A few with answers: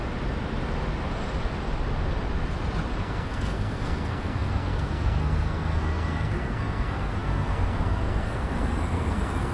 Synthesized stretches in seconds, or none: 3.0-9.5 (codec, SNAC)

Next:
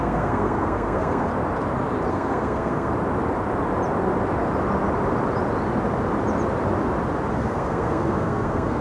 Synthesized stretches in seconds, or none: 0.0-1.3 (codec, SNAC); 2.1-2.9; 7.3-8.8

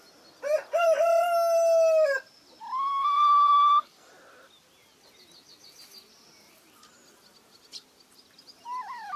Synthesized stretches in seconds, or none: 2.9-4.1 (codec, SNAC)

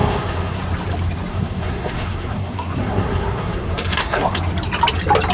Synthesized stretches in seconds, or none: 0.0-0.6 (codec, SNAC); 1.3-4.4